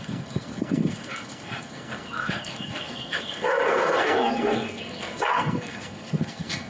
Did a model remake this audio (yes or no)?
yes